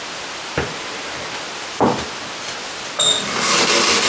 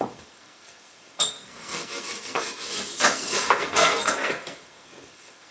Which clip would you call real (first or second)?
first